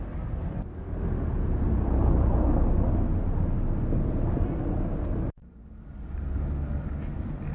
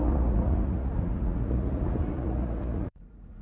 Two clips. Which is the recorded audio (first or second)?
first